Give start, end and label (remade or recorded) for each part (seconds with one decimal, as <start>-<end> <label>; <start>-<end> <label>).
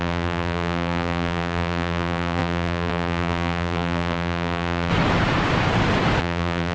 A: 0.0-4.9 remade; 4.9-6.2 recorded; 6.2-6.7 remade